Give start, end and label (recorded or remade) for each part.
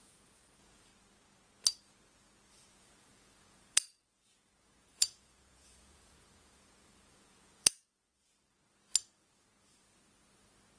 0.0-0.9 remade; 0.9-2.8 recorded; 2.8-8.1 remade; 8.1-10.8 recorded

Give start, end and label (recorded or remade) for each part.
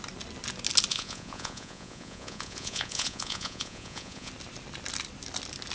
0.0-0.9 recorded; 0.9-4.3 remade; 4.3-5.7 recorded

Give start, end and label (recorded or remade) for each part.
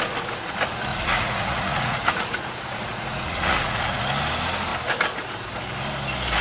0.0-0.9 recorded; 0.9-4.0 remade; 4.0-6.4 recorded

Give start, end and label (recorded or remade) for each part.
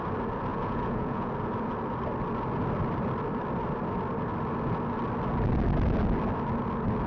0.0-0.5 recorded; 0.5-1.3 remade; 1.3-7.1 recorded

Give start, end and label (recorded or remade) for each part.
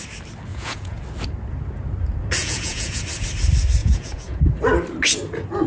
0.0-0.5 recorded; 0.5-1.0 remade; 1.0-2.4 recorded; 2.4-3.0 remade; 3.0-3.8 recorded; 3.8-4.6 remade; 4.6-5.7 recorded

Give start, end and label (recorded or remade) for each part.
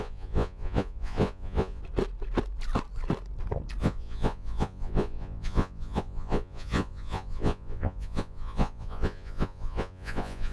0.0-1.8 remade; 1.8-3.8 recorded; 3.8-10.5 remade